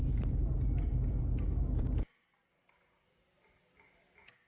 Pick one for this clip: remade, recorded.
recorded